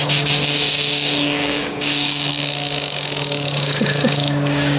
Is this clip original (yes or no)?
no